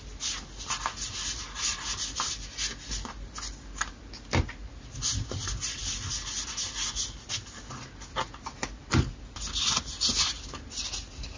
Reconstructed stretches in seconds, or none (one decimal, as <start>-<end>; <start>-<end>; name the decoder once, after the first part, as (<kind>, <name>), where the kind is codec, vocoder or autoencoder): none